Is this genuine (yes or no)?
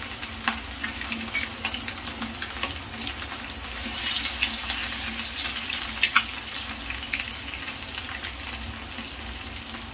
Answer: yes